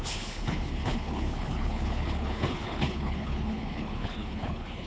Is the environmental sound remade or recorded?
remade